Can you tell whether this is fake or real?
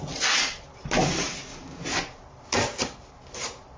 real